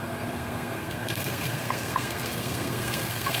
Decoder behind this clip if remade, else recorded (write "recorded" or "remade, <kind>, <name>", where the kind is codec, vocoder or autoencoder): remade, codec, SNAC